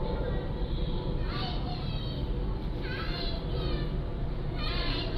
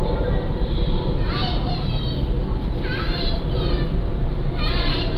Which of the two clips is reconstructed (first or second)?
second